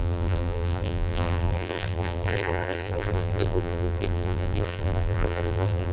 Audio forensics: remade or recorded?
remade